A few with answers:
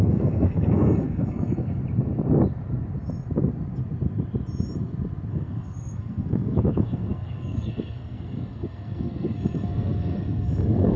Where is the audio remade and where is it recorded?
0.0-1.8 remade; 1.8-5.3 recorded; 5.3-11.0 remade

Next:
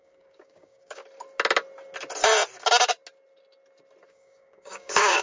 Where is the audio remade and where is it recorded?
0.0-1.0 remade; 1.0-4.1 recorded; 4.1-5.2 remade

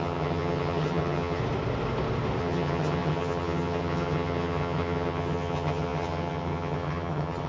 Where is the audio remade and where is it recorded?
0.0-1.4 remade; 1.4-2.4 recorded; 2.4-7.5 remade

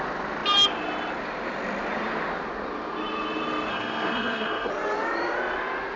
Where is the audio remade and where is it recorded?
0.0-3.7 recorded; 3.7-4.7 remade; 4.7-6.0 recorded